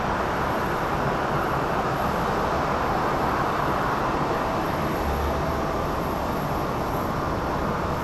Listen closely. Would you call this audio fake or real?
real